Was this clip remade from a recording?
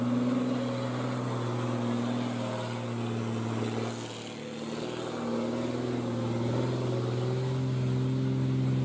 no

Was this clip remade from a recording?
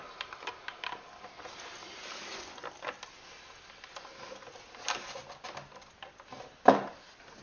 no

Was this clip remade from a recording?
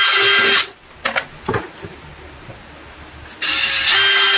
no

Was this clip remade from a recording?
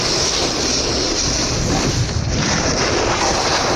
no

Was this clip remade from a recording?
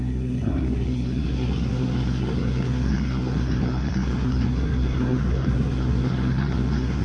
yes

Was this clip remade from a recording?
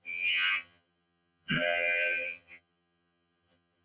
yes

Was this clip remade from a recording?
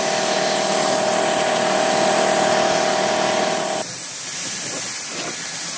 no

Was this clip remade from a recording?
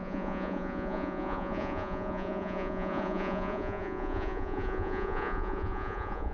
yes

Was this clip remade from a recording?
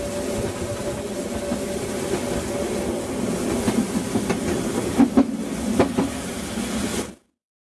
no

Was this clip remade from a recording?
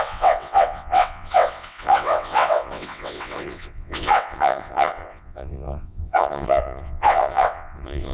yes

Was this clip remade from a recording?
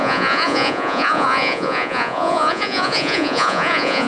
yes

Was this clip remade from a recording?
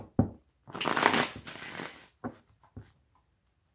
no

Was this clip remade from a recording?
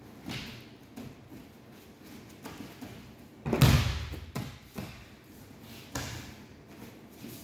no